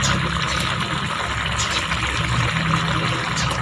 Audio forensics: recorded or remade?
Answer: recorded